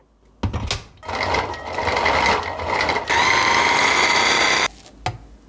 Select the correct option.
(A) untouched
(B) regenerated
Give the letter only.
A